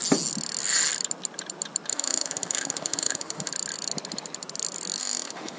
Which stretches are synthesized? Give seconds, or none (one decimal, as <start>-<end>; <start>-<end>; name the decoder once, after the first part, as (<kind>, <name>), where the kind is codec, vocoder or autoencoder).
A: 1.9-3.5 (autoencoder, DAC-VAE); 5.0-5.6